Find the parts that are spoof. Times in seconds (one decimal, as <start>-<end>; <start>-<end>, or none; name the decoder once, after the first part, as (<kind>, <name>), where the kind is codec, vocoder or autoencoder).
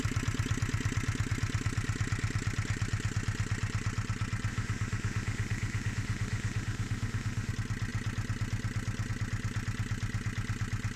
4.5-7.5 (autoencoder, DAC-VAE)